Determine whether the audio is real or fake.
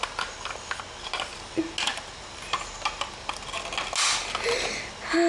real